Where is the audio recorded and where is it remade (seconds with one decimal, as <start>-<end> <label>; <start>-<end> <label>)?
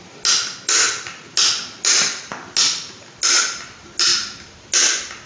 0.0-5.3 recorded